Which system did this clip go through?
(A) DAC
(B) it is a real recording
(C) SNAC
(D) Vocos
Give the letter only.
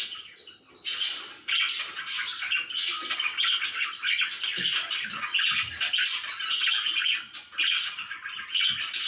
B